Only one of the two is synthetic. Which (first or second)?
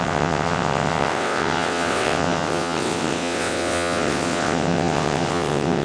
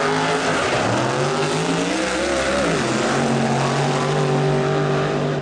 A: first